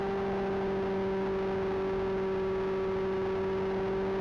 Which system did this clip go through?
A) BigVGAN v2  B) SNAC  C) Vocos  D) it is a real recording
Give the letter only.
D